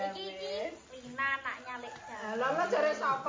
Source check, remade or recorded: recorded